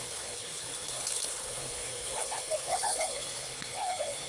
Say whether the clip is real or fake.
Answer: fake